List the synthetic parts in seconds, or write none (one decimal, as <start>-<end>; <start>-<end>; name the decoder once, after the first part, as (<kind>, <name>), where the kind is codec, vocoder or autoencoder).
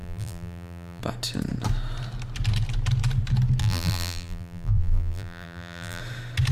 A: 0.0-1.0 (vocoder, BigVGAN v2); 3.6-6.0